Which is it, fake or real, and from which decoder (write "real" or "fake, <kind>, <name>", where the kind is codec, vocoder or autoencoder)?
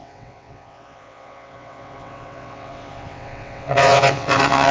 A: fake, vocoder, WaveNeXt